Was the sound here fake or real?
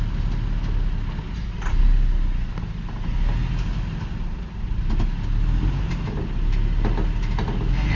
real